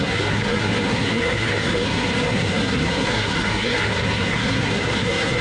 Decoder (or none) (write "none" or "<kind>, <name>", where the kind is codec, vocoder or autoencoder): codec, SNAC